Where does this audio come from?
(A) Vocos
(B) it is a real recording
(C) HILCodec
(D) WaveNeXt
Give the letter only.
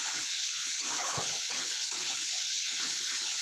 C